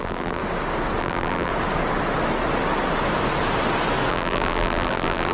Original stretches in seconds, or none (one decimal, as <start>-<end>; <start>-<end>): 0.4-1.0; 1.5-4.1